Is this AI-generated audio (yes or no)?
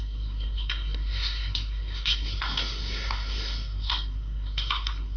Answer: yes